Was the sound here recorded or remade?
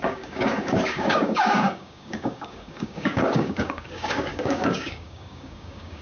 remade